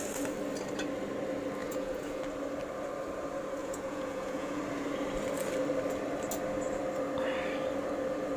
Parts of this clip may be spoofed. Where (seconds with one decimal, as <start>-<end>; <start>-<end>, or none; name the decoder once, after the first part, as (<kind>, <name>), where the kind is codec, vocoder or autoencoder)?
1.6-2.2 (vocoder, Vocos); 3.6-4.6